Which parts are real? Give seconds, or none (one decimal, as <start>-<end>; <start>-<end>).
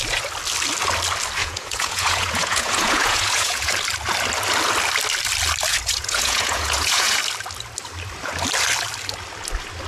0.0-1.4; 3.7-5.7; 7.2-9.9